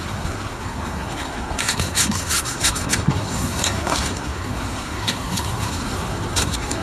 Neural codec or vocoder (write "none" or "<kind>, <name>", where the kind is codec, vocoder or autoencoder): codec, SNAC